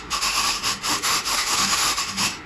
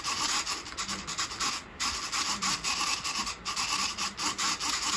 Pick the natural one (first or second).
second